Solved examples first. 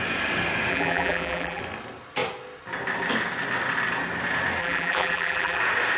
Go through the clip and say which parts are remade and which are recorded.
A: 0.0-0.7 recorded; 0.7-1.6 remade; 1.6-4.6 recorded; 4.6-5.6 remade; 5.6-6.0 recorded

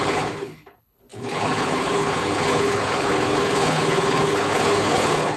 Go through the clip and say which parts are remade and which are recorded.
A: 0.0-5.4 remade

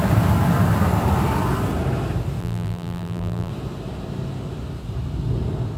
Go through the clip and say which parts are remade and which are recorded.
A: 0.0-2.4 recorded; 2.4-3.5 remade; 3.5-5.8 recorded

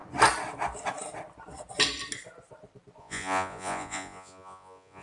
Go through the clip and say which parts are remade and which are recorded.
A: 0.0-3.0 recorded; 3.0-5.0 remade

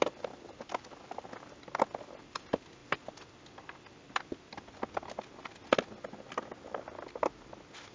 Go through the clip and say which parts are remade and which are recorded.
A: 0.0-7.9 recorded